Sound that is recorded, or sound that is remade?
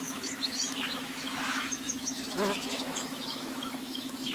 remade